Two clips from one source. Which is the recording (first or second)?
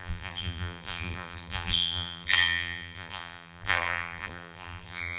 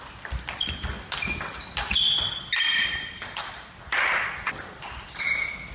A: second